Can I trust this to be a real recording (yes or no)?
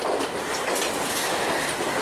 yes